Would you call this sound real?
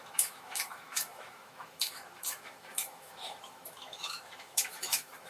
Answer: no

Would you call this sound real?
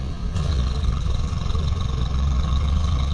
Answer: no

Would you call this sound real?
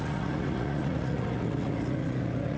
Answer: no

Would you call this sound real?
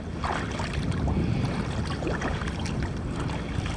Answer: yes